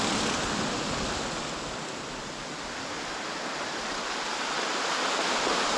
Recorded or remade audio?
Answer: recorded